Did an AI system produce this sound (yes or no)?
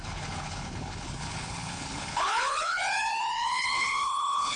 yes